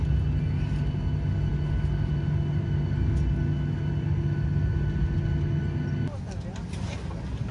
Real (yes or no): yes